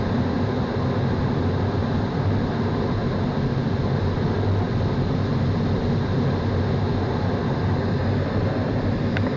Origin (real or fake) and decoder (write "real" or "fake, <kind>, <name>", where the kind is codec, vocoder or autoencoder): real